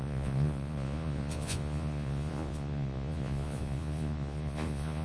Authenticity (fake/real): fake